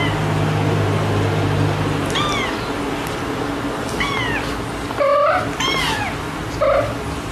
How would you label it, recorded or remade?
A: recorded